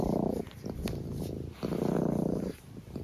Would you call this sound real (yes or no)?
yes